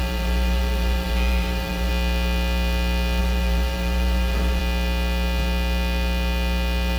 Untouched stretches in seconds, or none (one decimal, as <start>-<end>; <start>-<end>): 1.9-3.2; 4.6-7.0